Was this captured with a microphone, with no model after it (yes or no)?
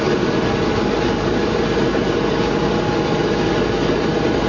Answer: yes